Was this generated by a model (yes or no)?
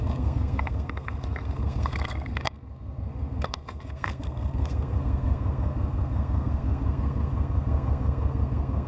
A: yes